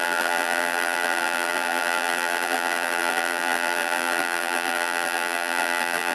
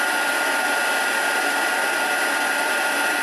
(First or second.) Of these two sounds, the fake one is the first